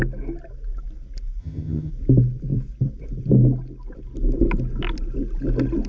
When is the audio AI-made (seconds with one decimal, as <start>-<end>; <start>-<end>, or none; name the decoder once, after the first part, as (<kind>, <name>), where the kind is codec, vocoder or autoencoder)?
1.4-1.9 (vocoder, HiFi-GAN)